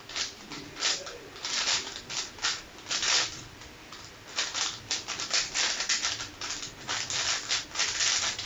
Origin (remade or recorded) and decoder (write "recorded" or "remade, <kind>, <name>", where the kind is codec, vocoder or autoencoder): recorded